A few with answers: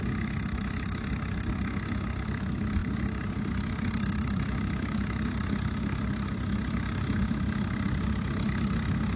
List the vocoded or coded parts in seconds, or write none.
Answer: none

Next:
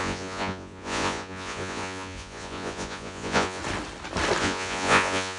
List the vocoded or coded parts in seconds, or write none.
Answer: 0.0-3.6; 4.4-5.4

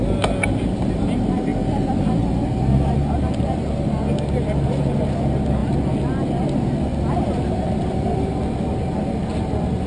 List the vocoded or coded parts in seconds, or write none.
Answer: none

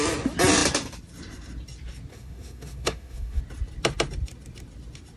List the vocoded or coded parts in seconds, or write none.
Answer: 2.1-3.4

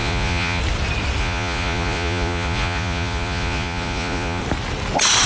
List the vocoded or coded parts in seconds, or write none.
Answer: 0.0-0.6; 1.2-4.4